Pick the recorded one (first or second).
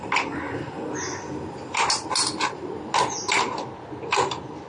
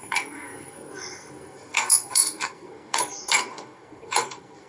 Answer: first